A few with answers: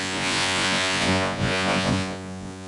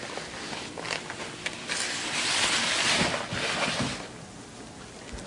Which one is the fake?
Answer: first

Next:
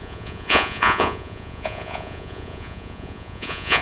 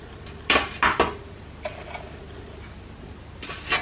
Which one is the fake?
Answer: first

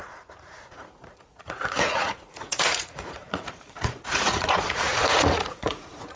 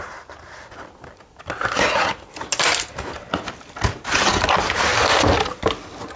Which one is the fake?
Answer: first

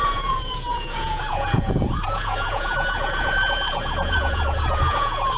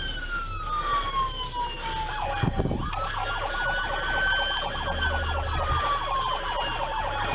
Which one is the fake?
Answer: first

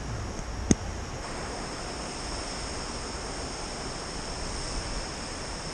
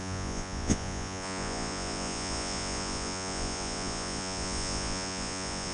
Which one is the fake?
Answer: second